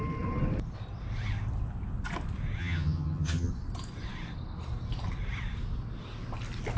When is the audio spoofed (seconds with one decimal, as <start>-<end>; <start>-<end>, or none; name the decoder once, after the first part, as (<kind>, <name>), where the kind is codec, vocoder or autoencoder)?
2.6-3.5 (vocoder, HiFi-GAN)

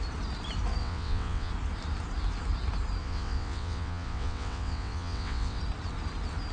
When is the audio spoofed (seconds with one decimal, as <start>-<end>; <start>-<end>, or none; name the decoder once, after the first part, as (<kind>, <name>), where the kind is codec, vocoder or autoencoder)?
0.8-1.5 (vocoder, WaveNeXt); 3.0-5.6

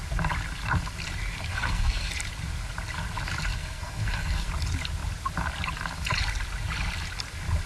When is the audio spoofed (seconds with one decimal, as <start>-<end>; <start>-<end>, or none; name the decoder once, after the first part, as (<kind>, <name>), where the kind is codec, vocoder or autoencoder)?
1.5-2.1 (codec, SNAC); 3.5-4.5

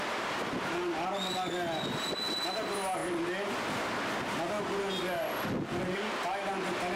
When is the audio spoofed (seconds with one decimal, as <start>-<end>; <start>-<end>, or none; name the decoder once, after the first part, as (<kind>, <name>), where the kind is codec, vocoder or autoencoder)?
none

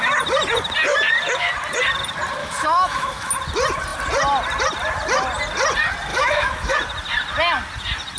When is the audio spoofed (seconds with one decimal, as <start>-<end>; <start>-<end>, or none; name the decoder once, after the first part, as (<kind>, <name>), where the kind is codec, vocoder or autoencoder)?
2.4-3.3 (autoencoder, DAC-VAE); 6.1-6.7